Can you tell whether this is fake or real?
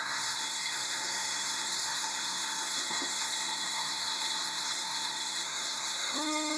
fake